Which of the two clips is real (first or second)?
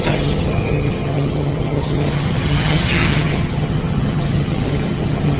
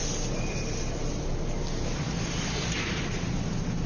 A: second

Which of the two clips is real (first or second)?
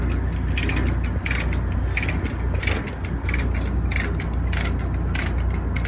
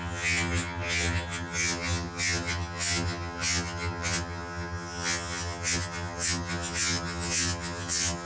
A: first